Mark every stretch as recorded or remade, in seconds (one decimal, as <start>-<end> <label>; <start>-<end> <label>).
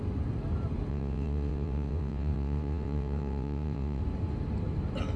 0.0-0.9 recorded; 0.9-4.0 remade; 4.0-5.2 recorded